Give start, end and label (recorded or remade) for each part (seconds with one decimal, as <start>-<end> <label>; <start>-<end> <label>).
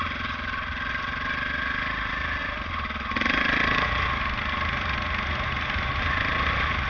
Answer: 0.0-6.9 recorded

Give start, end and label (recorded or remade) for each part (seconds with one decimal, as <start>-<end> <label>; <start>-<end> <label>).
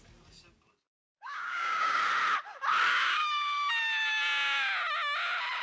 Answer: 0.0-1.1 recorded; 1.1-2.0 remade; 2.0-2.9 recorded; 2.9-3.7 remade; 3.7-5.6 recorded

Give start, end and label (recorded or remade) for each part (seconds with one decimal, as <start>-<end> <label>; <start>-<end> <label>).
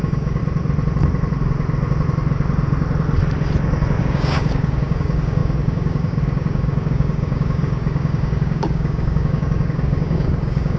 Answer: 0.0-0.4 remade; 0.4-4.0 recorded; 4.0-10.8 remade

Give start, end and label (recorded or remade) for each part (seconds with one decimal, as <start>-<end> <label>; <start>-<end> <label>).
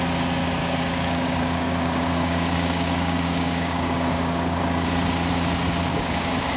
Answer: 0.0-0.6 recorded; 0.6-4.6 remade; 4.6-5.9 recorded; 5.9-6.6 remade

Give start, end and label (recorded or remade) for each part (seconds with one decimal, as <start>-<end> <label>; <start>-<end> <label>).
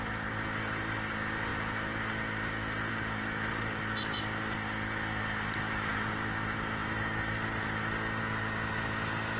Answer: 0.0-9.4 recorded